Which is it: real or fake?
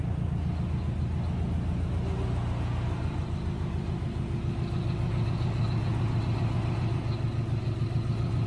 real